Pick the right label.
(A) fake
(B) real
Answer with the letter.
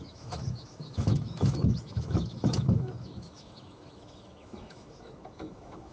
A